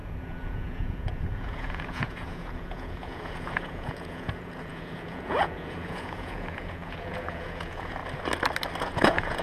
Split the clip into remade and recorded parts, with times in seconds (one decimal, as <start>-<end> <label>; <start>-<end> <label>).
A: 0.0-8.0 remade; 8.0-8.8 recorded; 8.8-9.4 remade